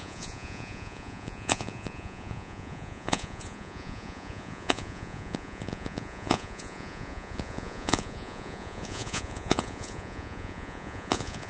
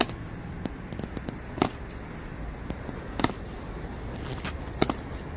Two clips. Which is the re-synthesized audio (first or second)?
first